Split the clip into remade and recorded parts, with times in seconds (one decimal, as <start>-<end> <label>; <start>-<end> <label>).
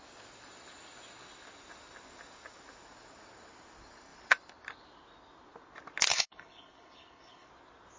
0.0-6.1 recorded; 6.1-7.5 remade; 7.5-8.0 recorded